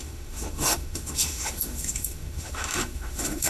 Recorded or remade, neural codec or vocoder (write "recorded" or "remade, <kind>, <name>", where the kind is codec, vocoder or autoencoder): remade, autoencoder, DAC-VAE